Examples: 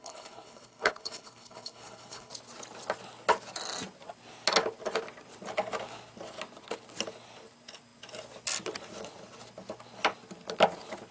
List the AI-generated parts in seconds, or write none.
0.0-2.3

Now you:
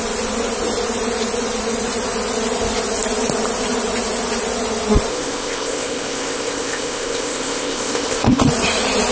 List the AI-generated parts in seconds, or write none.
5.1-8.4

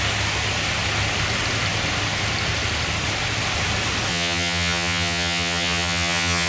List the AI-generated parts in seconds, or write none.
4.1-6.5

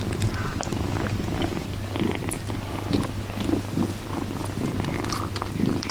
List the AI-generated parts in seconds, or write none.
none

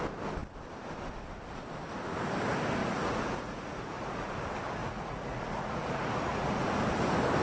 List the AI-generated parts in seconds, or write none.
2.8-4.2; 4.8-6.8

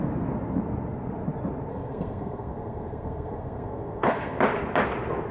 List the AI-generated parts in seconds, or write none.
1.7-4.4

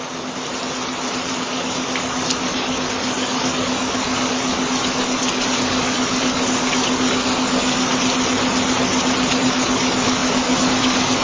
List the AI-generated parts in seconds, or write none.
0.0-0.5; 1.3-7.9; 9.3-11.2

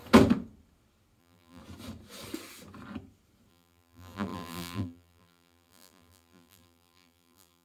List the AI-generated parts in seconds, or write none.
1.2-1.6; 3.5-7.6